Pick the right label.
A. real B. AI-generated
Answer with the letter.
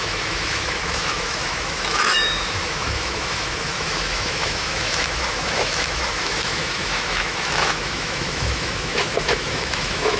B